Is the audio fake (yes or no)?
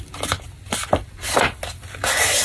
no